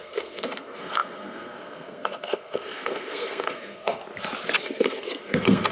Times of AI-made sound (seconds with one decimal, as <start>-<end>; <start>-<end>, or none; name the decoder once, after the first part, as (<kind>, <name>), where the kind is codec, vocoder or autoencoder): 0.0-4.0 (codec, SNAC); 4.6-5.7